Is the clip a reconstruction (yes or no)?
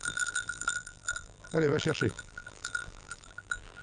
yes